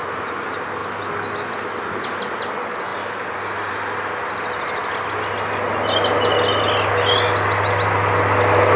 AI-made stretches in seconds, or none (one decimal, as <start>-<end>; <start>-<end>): 2.9-3.7